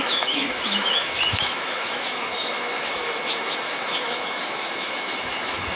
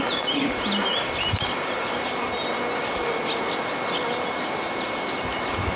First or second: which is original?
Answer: second